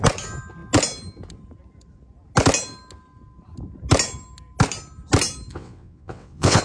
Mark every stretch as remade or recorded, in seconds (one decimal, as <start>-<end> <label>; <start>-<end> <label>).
0.0-5.5 recorded; 5.5-6.6 remade